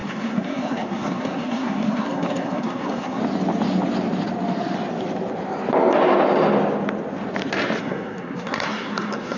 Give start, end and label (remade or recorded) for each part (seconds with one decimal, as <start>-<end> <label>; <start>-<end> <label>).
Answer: 0.0-3.2 remade; 3.2-7.8 recorded; 7.8-9.4 remade